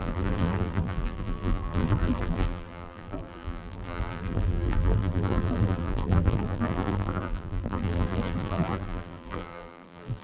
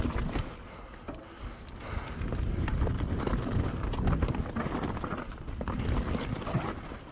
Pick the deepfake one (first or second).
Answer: first